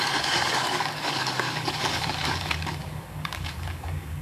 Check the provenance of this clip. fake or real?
fake